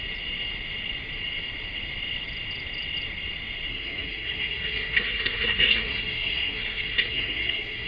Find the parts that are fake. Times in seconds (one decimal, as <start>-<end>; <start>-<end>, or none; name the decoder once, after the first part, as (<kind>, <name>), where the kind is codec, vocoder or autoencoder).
3.7-7.9 (codec, SNAC)